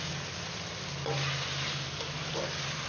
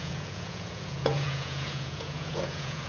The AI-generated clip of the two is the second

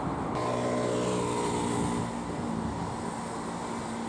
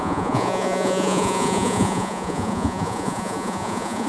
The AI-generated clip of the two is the second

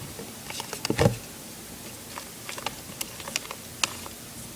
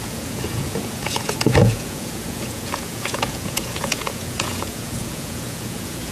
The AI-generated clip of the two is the second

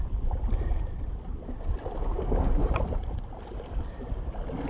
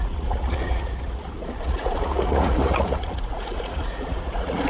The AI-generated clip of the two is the second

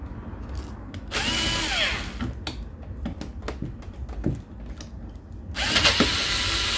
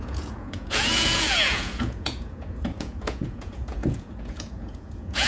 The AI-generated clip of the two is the second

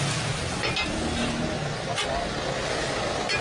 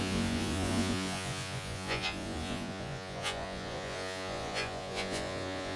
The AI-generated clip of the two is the second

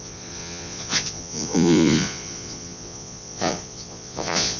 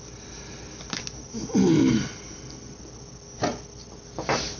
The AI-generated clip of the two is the first